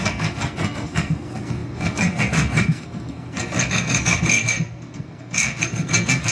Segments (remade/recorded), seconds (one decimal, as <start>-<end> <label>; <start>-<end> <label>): 0.0-6.3 remade